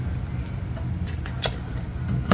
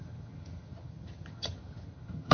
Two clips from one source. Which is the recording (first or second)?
first